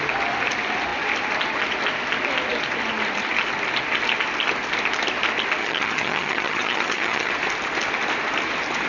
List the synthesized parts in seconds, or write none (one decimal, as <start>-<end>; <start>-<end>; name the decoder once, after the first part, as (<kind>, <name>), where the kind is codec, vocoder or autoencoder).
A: 5.6-7.3 (vocoder, HiFi-GAN)